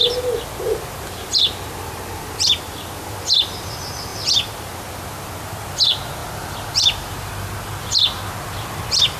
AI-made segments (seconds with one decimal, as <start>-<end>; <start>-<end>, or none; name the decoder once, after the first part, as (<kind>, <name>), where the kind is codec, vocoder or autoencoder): 6.2-7.3 (vocoder, BigVGAN v2)